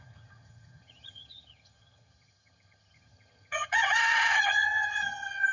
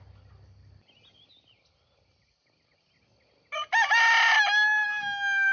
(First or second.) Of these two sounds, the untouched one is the second